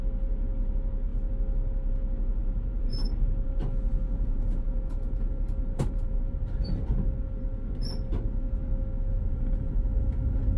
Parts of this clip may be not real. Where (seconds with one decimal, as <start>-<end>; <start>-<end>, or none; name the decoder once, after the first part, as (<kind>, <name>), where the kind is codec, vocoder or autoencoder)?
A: 2.4-6.9 (vocoder, BigVGAN v2); 9.1-9.7